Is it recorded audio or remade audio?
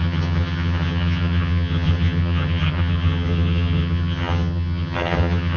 remade